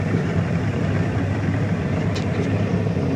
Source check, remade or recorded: recorded